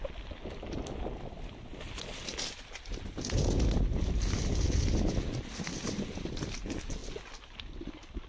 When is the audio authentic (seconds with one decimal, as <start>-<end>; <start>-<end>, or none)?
0.0-8.3